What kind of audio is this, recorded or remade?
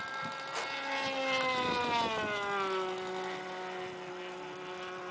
recorded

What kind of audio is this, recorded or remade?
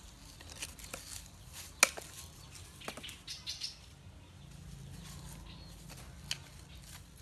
recorded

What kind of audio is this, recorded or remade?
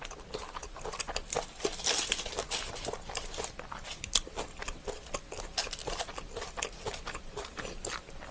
recorded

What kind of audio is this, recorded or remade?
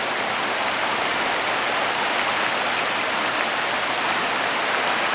recorded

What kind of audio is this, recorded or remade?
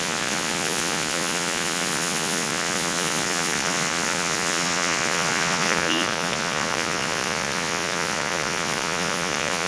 remade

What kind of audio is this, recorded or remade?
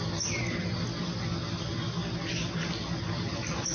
recorded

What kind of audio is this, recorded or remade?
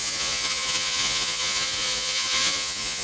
remade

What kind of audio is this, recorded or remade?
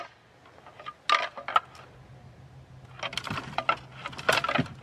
recorded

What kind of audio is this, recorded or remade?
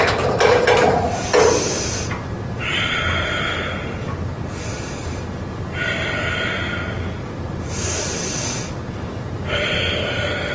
recorded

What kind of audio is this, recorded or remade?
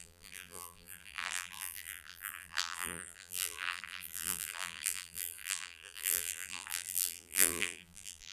remade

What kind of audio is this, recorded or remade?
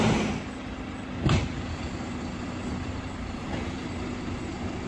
recorded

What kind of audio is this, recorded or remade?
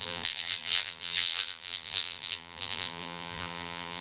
remade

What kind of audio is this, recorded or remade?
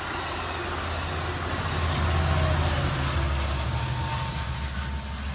recorded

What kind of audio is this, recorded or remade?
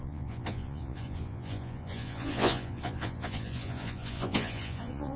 remade